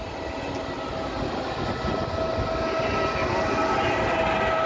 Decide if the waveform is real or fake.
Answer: real